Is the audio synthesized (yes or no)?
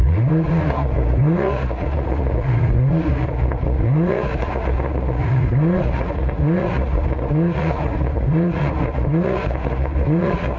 yes